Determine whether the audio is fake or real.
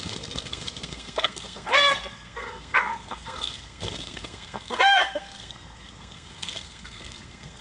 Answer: fake